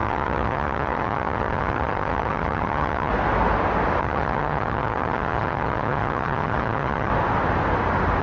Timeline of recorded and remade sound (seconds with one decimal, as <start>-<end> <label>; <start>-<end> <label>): 0.0-3.1 remade; 3.1-4.0 recorded; 4.0-7.1 remade; 7.1-8.2 recorded